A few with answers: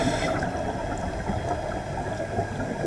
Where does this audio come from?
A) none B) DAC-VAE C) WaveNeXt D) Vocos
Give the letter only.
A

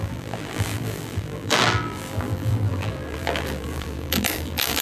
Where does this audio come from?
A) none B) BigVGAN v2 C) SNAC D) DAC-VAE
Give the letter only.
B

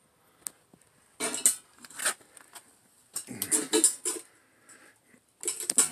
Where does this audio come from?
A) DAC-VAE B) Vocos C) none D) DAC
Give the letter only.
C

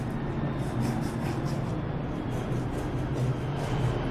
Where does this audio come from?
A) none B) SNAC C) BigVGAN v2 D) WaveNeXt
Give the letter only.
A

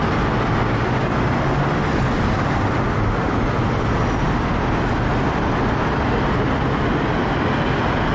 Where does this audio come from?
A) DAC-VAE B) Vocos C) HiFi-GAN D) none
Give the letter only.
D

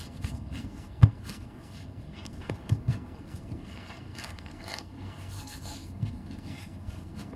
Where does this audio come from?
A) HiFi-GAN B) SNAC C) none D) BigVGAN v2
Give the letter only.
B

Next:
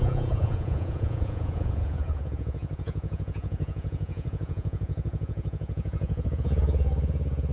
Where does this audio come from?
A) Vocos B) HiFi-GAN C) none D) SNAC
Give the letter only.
A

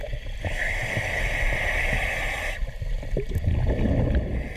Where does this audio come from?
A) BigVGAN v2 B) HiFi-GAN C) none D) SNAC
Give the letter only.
C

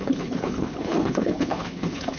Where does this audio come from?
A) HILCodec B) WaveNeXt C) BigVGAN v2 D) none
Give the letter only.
A